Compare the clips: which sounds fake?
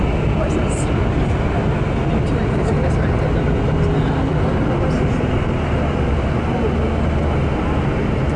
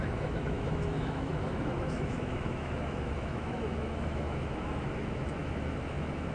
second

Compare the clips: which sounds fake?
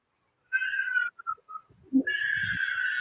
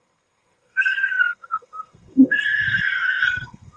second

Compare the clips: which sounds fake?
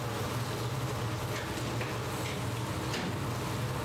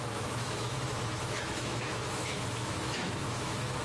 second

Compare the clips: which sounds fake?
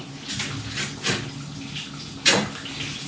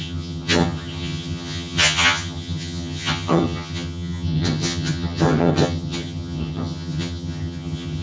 second